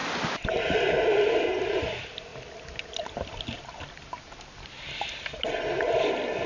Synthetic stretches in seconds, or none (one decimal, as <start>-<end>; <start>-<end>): none